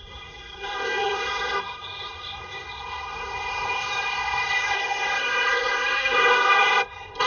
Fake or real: fake